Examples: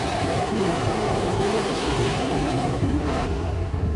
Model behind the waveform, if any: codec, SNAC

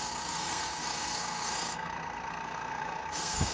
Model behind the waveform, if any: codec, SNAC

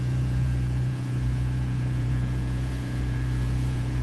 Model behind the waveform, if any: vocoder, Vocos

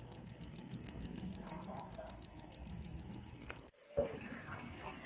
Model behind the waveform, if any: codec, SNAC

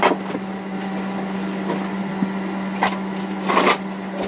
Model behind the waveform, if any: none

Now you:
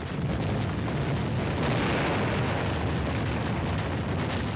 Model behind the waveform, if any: none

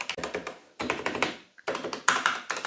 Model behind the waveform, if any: vocoder, BigVGAN v2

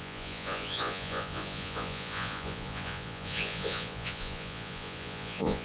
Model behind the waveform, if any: vocoder, Vocos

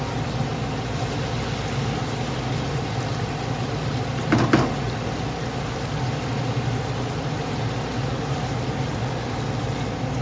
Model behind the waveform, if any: none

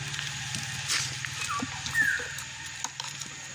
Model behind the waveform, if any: none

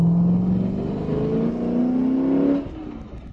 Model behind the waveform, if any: none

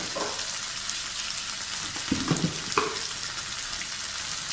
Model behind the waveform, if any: none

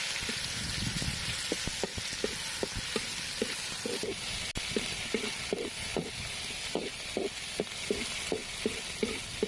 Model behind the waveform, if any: none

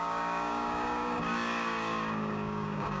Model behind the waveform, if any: codec, DAC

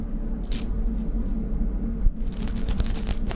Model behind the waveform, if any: none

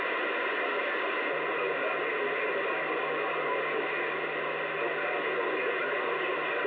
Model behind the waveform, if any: none